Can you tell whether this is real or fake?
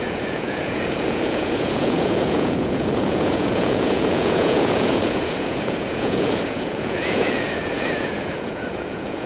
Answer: fake